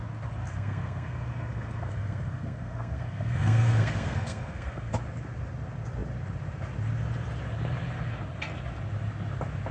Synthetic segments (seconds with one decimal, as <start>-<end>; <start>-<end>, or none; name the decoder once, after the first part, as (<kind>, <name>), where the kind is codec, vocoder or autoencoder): 0.5-4.9 (codec, SNAC)